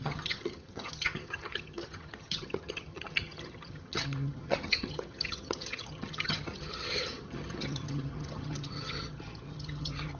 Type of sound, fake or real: fake